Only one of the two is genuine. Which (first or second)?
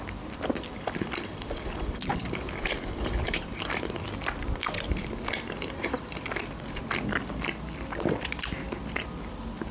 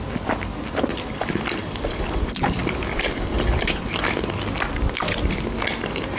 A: second